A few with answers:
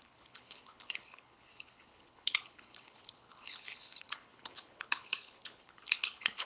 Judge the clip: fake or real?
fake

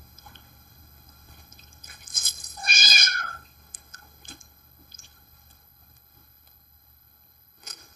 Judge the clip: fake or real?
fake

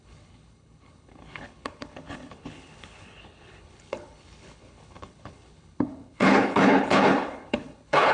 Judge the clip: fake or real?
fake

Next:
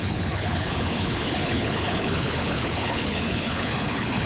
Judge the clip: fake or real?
fake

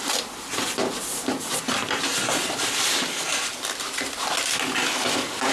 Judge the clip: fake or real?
real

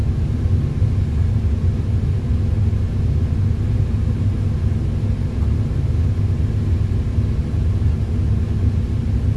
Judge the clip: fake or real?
real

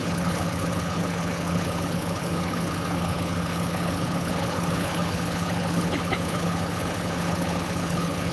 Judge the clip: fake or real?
fake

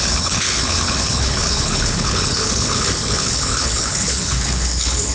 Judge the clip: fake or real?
fake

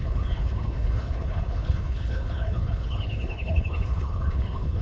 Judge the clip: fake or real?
fake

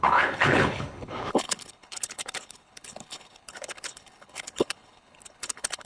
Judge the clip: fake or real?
fake